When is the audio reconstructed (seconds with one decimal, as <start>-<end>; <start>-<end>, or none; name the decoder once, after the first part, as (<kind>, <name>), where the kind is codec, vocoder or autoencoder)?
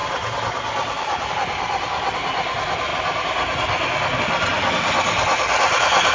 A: none